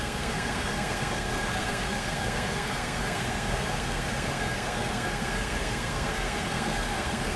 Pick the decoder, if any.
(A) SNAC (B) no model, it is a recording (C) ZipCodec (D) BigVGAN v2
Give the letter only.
A